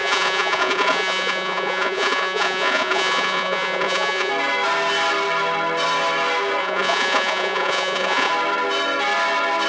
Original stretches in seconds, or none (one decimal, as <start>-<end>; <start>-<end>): 4.3-6.6; 8.3-9.7